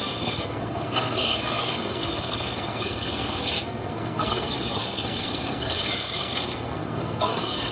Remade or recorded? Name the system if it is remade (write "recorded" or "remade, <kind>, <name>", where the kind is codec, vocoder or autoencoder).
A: remade, codec, SNAC